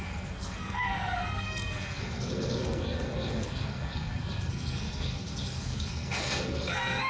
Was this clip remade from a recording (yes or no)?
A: yes